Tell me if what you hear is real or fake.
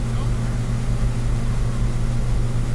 real